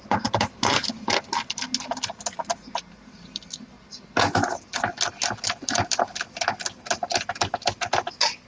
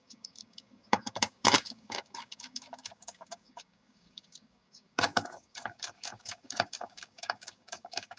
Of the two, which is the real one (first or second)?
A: first